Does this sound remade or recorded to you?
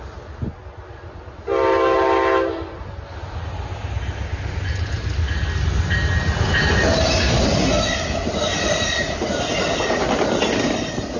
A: recorded